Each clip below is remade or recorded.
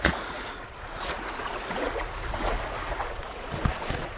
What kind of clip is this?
remade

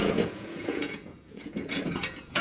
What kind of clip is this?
remade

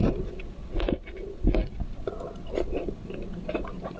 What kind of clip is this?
recorded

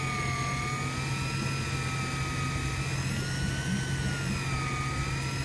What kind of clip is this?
recorded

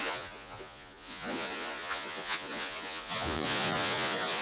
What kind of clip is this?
remade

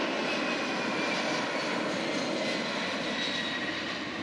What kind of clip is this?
recorded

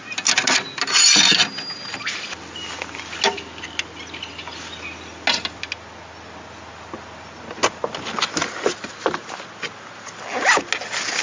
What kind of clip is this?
recorded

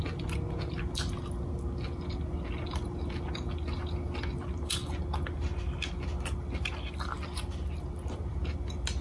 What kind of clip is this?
recorded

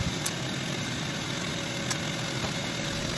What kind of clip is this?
recorded